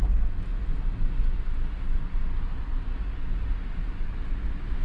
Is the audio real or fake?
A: real